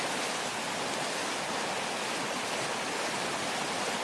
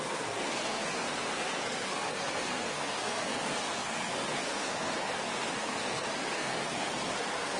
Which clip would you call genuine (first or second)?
first